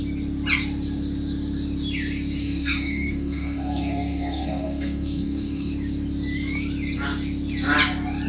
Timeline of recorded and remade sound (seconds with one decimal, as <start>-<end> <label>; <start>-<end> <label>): 0.0-2.4 recorded; 2.4-5.7 remade; 5.7-8.3 recorded